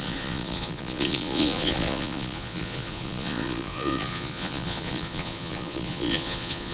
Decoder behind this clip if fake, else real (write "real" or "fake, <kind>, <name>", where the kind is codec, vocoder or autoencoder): fake, vocoder, Vocos